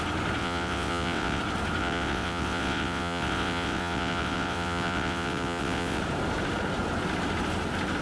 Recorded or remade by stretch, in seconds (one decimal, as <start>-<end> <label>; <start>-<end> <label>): 0.0-0.4 recorded; 0.4-1.4 remade; 1.4-1.8 recorded; 1.8-6.0 remade; 6.0-8.0 recorded